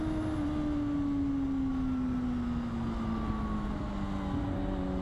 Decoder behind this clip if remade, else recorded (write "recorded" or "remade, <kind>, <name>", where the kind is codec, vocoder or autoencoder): recorded